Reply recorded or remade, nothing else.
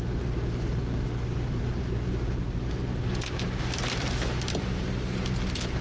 recorded